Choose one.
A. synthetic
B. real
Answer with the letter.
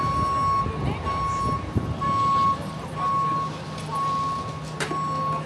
B